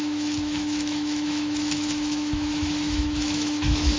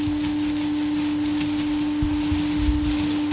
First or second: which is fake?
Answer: first